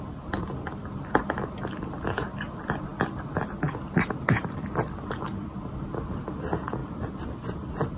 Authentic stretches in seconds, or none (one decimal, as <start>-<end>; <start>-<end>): 0.0-8.0